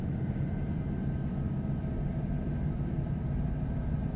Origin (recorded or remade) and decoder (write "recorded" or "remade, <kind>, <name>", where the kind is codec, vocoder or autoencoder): remade, vocoder, BigVGAN v2